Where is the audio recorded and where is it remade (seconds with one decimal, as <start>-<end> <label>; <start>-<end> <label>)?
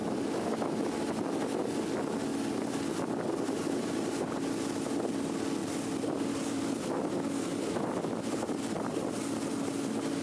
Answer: 0.0-5.6 recorded; 5.6-6.9 remade; 6.9-10.2 recorded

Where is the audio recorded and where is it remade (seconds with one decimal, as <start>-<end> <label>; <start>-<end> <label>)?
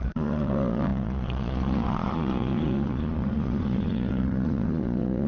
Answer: 0.0-5.3 remade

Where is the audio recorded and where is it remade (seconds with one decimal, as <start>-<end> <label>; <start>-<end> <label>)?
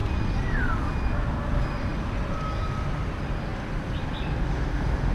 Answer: 0.0-5.1 recorded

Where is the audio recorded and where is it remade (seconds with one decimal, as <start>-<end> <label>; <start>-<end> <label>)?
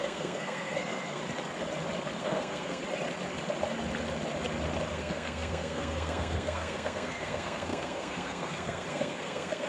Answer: 0.0-1.2 remade; 1.2-2.2 recorded; 2.2-2.8 remade; 2.8-4.9 recorded; 4.9-9.7 remade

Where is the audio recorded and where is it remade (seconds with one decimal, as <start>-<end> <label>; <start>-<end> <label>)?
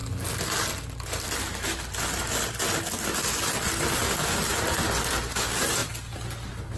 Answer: 0.0-6.8 recorded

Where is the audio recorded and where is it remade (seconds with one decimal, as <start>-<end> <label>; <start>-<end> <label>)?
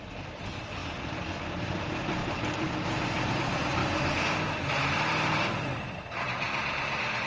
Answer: 0.0-7.3 remade